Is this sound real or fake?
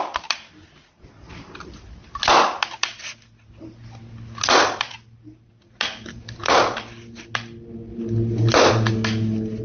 real